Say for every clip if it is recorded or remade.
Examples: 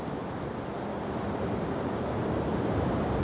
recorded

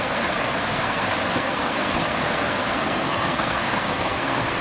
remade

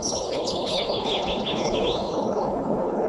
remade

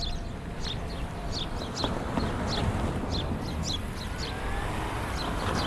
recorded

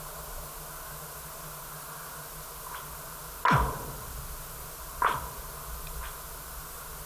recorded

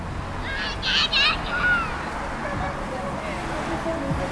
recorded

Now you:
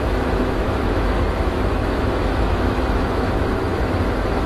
remade